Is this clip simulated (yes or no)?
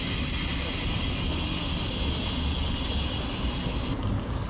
no